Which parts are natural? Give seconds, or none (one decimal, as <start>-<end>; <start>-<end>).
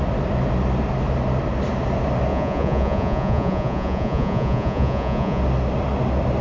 0.0-2.3; 5.4-6.4